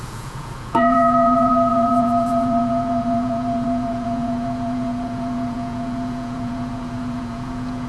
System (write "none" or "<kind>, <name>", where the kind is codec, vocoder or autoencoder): vocoder, Vocos